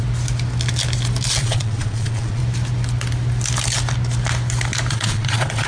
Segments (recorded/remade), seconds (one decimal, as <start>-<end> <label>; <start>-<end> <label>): 0.0-1.4 recorded; 1.4-2.4 remade; 2.4-4.9 recorded; 4.9-5.7 remade